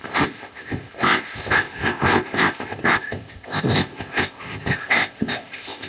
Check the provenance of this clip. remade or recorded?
remade